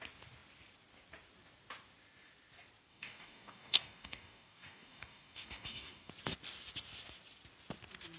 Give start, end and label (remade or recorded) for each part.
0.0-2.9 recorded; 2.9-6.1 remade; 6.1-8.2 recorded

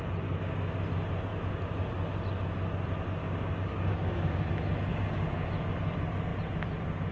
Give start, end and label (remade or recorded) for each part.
0.0-3.2 recorded; 3.2-4.5 remade; 4.5-4.9 recorded; 4.9-5.5 remade; 5.5-7.1 recorded

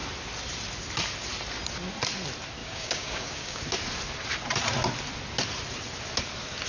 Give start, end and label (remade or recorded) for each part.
0.0-2.6 recorded; 2.6-3.6 remade; 3.6-6.7 recorded